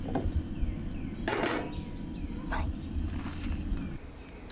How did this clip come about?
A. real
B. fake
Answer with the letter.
A